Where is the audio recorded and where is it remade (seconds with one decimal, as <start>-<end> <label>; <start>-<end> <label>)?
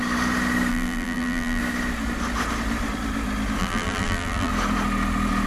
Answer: 0.0-0.7 recorded; 0.7-1.6 remade; 1.6-3.6 recorded; 3.6-4.5 remade; 4.5-5.5 recorded